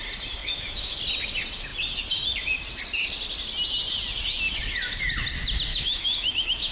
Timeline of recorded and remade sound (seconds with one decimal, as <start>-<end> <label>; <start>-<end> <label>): 0.0-0.4 recorded; 0.4-1.0 remade; 1.0-5.7 recorded; 5.7-6.7 remade